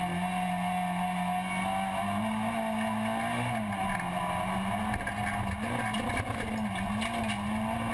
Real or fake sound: real